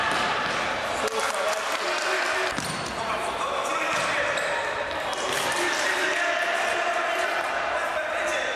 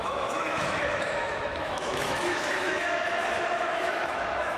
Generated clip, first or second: second